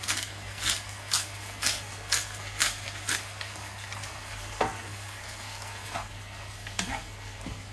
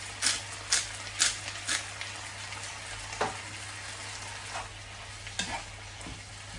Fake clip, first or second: first